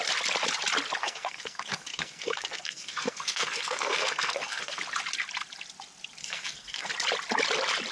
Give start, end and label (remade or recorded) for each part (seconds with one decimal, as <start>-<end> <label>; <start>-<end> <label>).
0.0-1.0 recorded; 1.0-4.8 remade; 4.8-6.2 recorded; 6.2-6.9 remade; 6.9-7.9 recorded

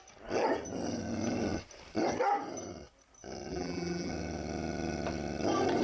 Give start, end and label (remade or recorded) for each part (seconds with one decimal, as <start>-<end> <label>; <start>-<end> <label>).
0.0-3.5 recorded; 3.5-4.1 remade; 4.1-5.8 recorded

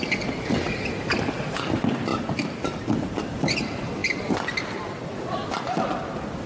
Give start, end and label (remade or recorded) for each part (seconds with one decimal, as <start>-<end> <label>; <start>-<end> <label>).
0.0-4.0 recorded; 4.0-4.9 remade; 4.9-6.5 recorded

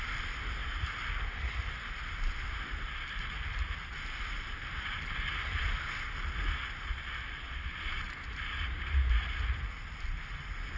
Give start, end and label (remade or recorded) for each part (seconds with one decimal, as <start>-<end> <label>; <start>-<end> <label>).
0.0-10.8 recorded

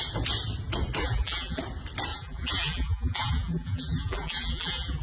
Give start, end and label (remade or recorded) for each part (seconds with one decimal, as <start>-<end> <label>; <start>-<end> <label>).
0.0-1.0 recorded; 1.0-1.6 remade; 1.6-2.1 recorded; 2.1-5.0 remade